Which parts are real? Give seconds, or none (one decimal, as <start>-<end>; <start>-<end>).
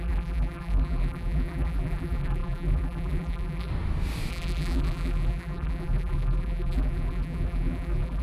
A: 3.7-4.3